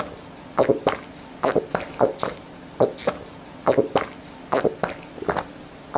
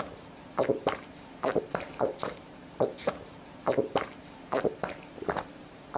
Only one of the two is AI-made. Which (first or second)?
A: second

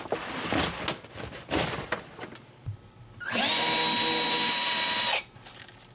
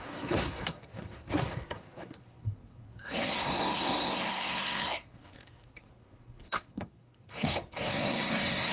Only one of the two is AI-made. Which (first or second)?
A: second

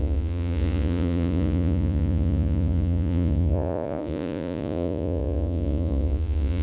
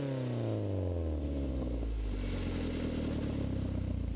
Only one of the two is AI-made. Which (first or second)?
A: first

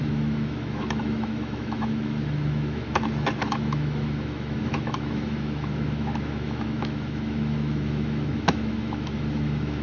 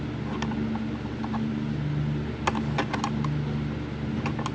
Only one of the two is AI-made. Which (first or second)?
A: first